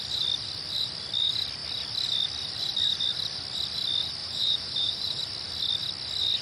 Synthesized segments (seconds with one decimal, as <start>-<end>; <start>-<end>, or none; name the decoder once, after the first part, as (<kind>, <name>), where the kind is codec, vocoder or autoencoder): 4.2-5.2 (vocoder, BigVGAN v2)